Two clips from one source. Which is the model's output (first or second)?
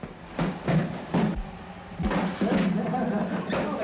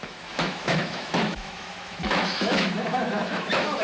second